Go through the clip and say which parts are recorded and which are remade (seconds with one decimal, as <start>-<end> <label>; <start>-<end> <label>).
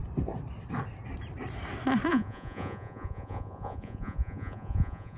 0.0-2.1 recorded; 2.1-5.2 remade